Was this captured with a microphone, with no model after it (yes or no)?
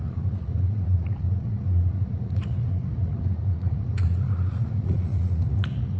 no